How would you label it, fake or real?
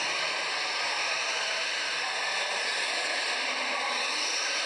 real